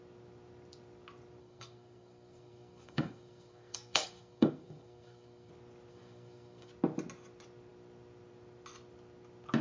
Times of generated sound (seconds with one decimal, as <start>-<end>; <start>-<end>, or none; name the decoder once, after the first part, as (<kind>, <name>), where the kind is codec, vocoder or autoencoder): 1.4-5.5 (codec, SNAC); 5.9-6.7